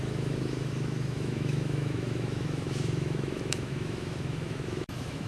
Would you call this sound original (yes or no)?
no